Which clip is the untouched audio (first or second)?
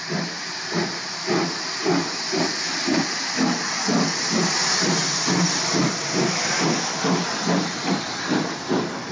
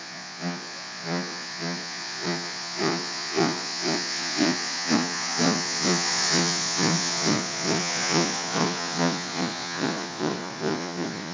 first